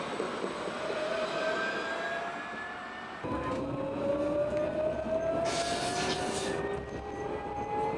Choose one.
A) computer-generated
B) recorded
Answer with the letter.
B